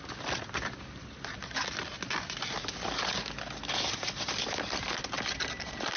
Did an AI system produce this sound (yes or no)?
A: no